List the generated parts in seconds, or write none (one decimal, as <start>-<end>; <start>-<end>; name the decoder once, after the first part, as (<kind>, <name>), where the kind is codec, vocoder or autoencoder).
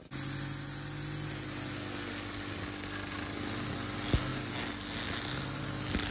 none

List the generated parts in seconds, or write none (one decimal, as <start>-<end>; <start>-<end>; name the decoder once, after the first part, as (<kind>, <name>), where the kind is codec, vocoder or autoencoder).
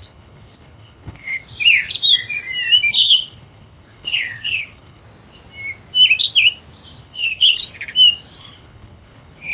0.0-1.4 (codec, HILCodec); 2.9-5.0; 7.0-7.6; 8.4-9.5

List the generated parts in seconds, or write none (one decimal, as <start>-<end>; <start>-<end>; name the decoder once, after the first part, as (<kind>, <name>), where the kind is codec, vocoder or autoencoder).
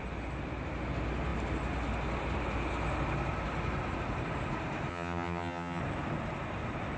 4.9-5.8 (vocoder, HiFi-GAN)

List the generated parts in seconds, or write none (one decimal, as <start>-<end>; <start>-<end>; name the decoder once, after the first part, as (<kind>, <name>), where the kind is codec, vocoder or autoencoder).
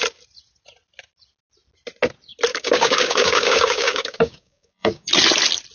2.5-5.1 (codec, DAC)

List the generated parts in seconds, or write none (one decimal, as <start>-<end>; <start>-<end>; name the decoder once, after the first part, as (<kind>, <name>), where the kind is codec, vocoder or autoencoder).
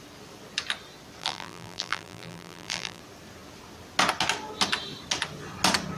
1.2-3.0 (vocoder, BigVGAN v2)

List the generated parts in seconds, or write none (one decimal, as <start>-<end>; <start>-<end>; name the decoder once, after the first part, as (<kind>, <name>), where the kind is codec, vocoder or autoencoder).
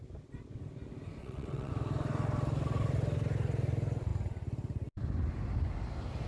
1.2-1.7 (vocoder, WaveNeXt)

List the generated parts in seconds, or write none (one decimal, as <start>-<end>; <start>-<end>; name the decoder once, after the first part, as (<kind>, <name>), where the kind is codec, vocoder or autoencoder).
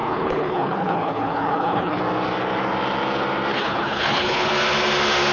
0.0-2.0 (codec, HILCodec); 3.5-4.5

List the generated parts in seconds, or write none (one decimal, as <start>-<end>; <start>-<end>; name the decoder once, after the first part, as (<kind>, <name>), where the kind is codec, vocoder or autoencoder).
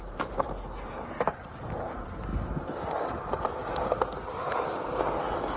none